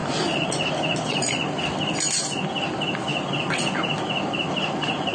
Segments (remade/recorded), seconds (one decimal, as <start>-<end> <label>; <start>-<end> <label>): 0.0-5.1 recorded

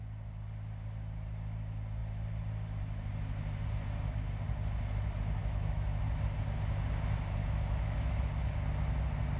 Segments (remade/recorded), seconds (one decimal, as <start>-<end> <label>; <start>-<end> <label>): 0.0-5.4 recorded; 5.4-6.0 remade; 6.0-7.4 recorded; 7.4-8.2 remade; 8.2-9.4 recorded

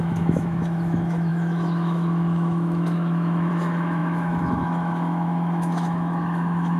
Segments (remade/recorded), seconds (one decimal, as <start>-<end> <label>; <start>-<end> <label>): 0.0-6.8 remade

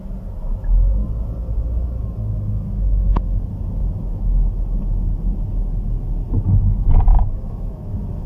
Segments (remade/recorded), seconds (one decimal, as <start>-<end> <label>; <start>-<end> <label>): 0.0-7.1 recorded; 7.1-7.9 remade; 7.9-8.3 recorded